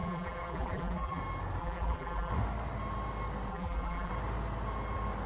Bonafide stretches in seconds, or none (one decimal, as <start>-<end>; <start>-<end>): 1.2-1.6; 2.3-3.5; 4.1-5.3